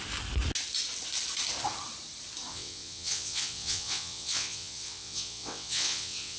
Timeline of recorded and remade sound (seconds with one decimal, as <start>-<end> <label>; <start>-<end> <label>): 0.0-2.5 recorded; 2.5-6.4 remade